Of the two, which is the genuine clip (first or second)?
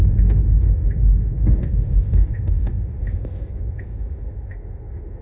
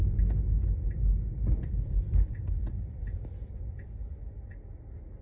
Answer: second